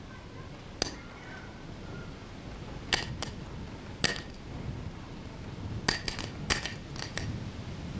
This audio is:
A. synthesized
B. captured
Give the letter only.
B